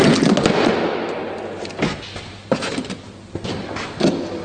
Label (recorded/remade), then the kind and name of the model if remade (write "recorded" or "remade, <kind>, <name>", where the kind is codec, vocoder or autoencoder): recorded